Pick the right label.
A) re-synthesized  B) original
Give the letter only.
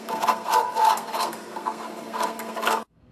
A